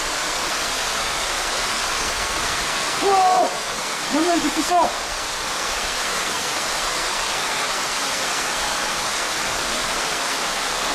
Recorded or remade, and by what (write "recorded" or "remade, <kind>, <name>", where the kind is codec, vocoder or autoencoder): remade, codec, SNAC